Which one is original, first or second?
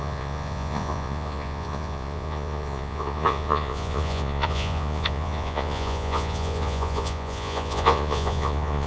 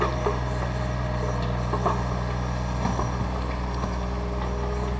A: second